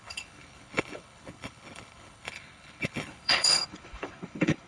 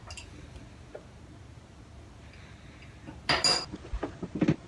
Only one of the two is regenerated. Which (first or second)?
first